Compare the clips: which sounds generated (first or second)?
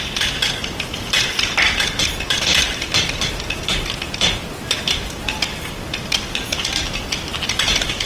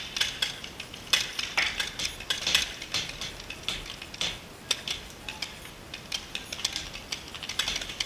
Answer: first